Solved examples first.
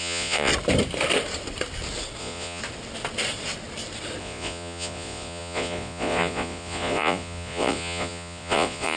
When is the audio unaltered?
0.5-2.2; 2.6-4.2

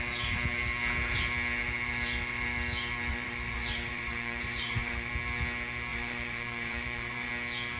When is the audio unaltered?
0.0-3.1; 5.1-5.9; 7.3-7.8

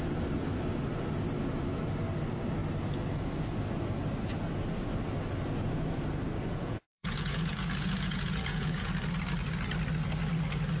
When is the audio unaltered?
0.0-6.5; 8.9-10.8